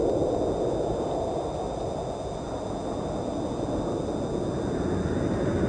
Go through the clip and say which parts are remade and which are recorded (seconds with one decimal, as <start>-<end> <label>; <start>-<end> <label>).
0.0-5.7 recorded